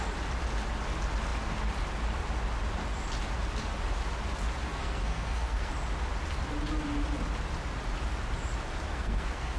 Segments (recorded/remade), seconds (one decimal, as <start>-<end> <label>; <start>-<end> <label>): 0.0-4.7 recorded; 4.7-5.7 remade; 5.7-8.9 recorded; 8.9-9.6 remade